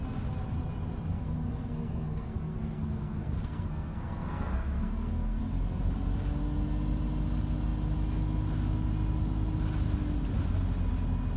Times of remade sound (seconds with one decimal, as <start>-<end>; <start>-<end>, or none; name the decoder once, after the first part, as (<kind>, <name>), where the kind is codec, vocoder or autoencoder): 1.1-5.4 (codec, SNAC)